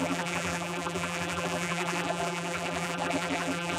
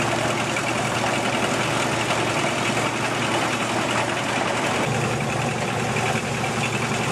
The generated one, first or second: first